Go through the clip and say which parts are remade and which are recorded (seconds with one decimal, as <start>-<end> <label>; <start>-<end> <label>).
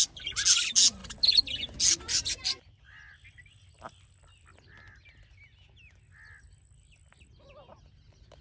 0.0-8.4 recorded